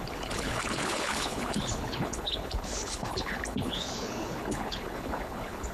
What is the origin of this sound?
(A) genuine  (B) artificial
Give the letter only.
B